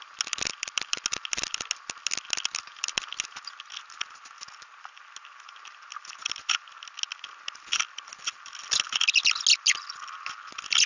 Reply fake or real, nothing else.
real